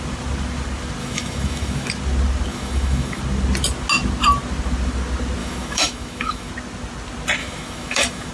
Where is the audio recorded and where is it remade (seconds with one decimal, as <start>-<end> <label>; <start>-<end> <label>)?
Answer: 0.0-1.0 recorded; 1.0-1.9 remade; 1.9-2.5 recorded; 2.5-3.2 remade; 3.2-5.4 recorded; 5.4-6.5 remade; 6.5-7.4 recorded; 7.4-8.3 remade